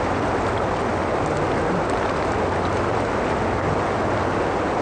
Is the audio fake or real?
real